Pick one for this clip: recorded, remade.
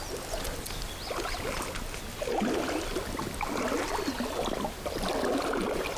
recorded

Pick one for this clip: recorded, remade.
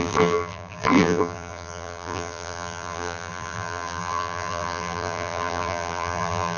remade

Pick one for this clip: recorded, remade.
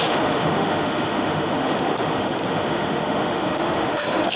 remade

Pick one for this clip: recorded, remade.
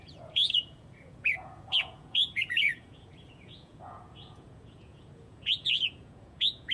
remade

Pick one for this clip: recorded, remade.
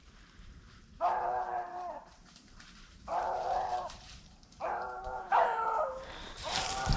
remade